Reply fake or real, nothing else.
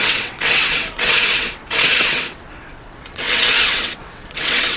fake